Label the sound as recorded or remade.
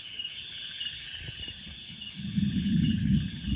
recorded